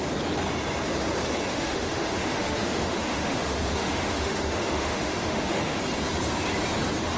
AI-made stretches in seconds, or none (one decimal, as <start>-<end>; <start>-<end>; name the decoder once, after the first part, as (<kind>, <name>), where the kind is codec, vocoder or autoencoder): 1.5-5.8 (autoencoder, DAC-VAE)